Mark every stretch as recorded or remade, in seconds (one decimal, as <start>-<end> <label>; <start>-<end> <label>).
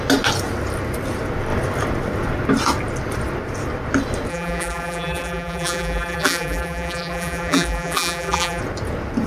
0.0-4.3 recorded; 4.3-8.6 remade; 8.6-9.3 recorded